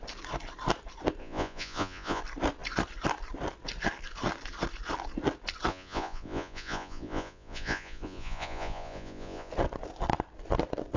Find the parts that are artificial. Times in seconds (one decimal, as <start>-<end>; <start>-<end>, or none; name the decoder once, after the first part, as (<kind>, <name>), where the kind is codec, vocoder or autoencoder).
1.2-2.2 (vocoder, Vocos); 5.7-9.5